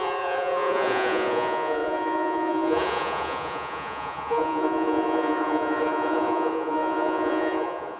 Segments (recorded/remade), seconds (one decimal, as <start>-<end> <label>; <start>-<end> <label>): 0.0-8.0 remade

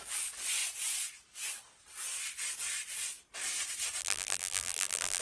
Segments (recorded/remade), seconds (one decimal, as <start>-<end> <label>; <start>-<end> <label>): 0.0-4.0 recorded; 4.0-5.2 remade

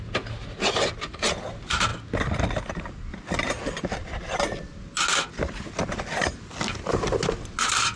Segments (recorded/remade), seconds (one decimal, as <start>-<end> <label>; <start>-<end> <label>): 0.0-8.0 recorded

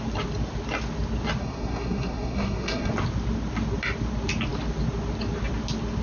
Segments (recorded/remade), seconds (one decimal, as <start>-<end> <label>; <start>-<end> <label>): 0.0-1.4 recorded; 1.4-2.9 remade; 2.9-6.0 recorded

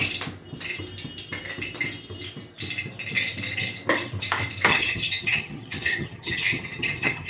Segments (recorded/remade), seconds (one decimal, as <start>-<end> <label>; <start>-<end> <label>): 0.0-4.7 recorded; 4.7-7.3 remade

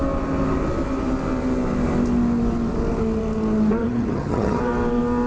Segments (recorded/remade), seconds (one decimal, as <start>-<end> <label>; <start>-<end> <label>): 0.0-3.8 recorded; 3.8-4.6 remade; 4.6-5.3 recorded